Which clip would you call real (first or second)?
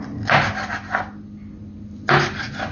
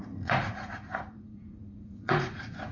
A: first